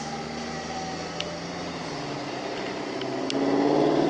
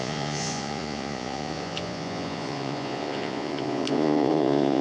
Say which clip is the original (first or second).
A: first